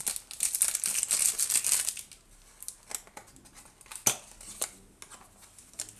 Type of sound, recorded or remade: recorded